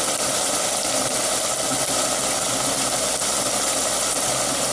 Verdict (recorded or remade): recorded